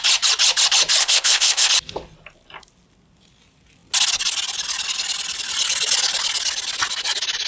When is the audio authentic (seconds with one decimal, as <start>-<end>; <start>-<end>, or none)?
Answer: 0.0-1.0; 1.7-7.5